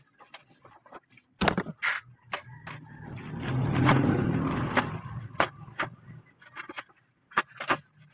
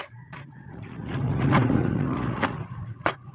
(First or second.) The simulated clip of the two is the second